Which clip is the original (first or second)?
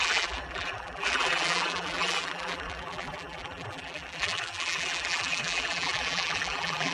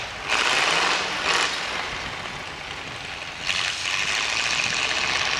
second